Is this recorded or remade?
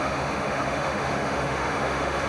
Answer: remade